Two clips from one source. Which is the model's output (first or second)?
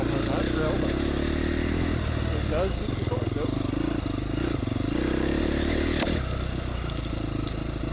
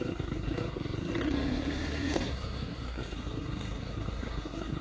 second